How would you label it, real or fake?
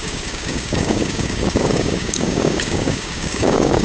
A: fake